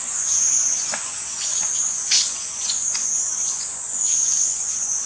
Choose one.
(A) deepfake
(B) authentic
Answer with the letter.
A